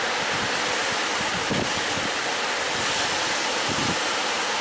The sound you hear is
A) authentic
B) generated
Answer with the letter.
A